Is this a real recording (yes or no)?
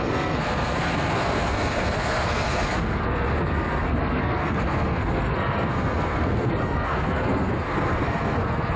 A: no